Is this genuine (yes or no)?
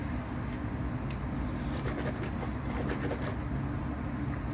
yes